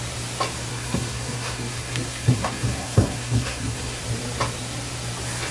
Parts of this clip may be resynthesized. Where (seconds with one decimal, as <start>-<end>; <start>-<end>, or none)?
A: 0.7-4.0